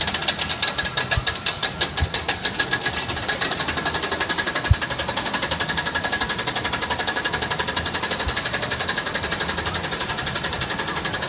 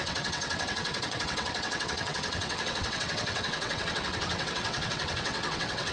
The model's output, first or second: second